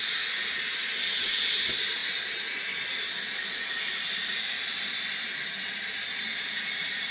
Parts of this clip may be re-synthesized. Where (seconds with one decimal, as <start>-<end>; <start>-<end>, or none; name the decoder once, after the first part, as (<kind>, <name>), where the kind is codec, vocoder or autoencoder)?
none